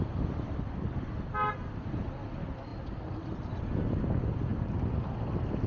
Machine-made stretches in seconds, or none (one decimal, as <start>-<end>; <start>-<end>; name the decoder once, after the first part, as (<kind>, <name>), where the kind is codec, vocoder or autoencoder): none